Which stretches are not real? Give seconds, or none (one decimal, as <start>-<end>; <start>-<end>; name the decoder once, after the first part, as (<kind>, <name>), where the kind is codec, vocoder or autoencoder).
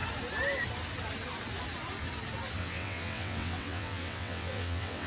2.6-5.1 (vocoder, WaveNeXt)